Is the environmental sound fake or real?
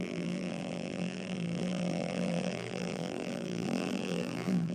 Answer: fake